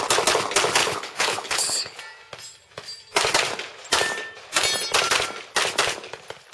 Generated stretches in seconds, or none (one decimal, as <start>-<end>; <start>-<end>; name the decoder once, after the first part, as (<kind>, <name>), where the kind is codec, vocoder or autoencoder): 0.8-2.0 (codec, HILCodec)